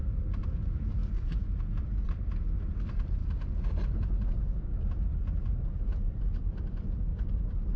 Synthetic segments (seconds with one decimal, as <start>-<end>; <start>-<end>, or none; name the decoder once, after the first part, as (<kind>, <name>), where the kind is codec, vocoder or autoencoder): 7.1-7.8 (vocoder, BigVGAN v2)